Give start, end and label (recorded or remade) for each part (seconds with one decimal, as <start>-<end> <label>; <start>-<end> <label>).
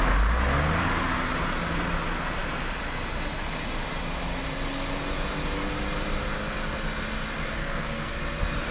0.0-7.6 recorded; 7.6-8.2 remade; 8.2-8.7 recorded